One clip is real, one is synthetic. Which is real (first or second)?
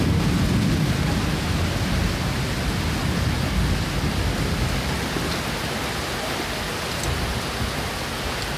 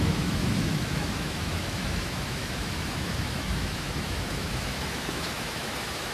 first